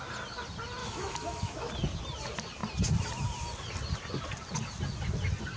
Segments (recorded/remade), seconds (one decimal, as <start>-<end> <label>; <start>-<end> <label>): 0.0-0.8 recorded; 0.8-1.7 remade; 1.7-5.6 recorded